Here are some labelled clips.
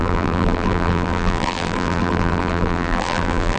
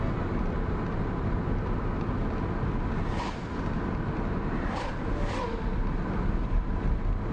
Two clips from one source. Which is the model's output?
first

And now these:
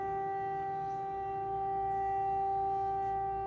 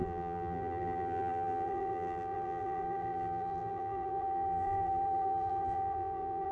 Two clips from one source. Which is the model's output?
second